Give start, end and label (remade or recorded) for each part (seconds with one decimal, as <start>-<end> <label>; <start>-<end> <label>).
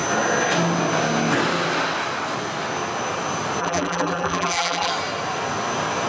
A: 0.0-3.6 recorded; 3.6-4.9 remade; 4.9-6.1 recorded